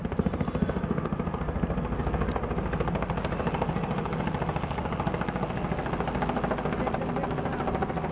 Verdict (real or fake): real